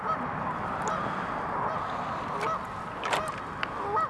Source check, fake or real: real